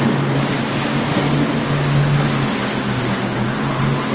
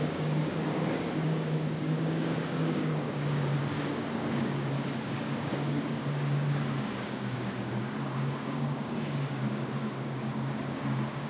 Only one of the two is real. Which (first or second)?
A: first